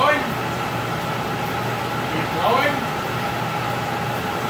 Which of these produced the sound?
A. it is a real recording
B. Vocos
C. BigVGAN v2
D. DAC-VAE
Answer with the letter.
A